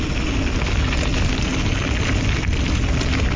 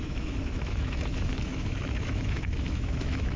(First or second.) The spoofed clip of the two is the second